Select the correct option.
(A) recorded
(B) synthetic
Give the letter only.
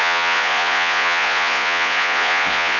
B